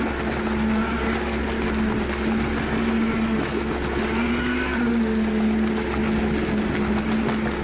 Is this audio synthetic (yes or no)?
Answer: no